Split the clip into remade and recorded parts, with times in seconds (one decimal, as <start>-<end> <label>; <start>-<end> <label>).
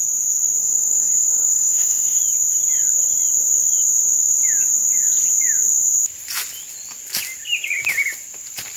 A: 0.0-0.6 recorded; 0.6-2.2 remade; 2.2-8.8 recorded